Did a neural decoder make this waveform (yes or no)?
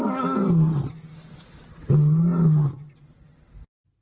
no